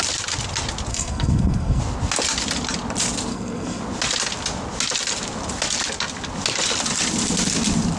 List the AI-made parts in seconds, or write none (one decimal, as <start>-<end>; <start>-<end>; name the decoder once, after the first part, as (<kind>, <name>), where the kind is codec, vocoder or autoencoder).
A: 0.9-1.8 (codec, SNAC); 3.3-3.8